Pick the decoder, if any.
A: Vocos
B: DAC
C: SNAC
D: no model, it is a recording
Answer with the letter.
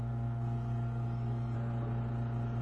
D